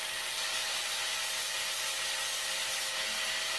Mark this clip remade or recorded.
recorded